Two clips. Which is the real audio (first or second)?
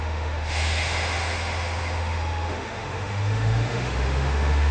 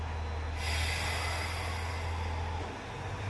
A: second